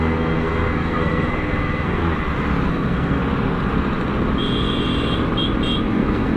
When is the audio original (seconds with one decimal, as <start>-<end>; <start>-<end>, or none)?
2.0-2.7; 3.2-5.9